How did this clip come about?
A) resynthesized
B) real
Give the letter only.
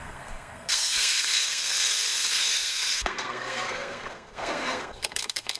A